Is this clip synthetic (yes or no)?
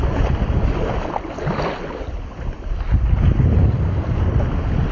no